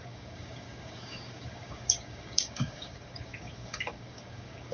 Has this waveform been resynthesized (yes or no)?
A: yes